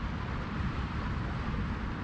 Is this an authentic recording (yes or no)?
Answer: yes